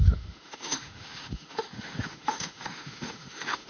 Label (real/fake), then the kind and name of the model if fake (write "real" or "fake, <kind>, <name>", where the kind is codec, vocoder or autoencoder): fake, autoencoder, DAC-VAE